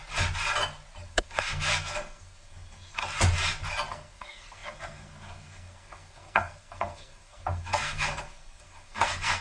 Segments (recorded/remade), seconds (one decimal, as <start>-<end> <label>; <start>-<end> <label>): 0.0-1.0 recorded; 1.0-3.0 remade; 3.0-3.9 recorded; 3.9-9.4 remade